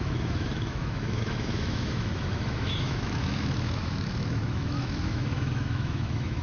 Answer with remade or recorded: remade